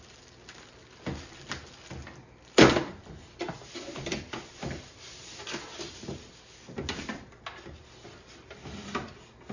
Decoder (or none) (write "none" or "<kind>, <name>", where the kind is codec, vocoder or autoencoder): none